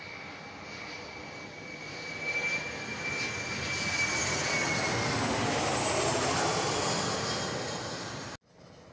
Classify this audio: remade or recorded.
recorded